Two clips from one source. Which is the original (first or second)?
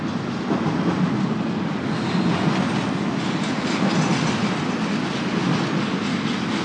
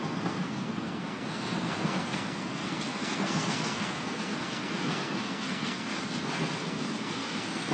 first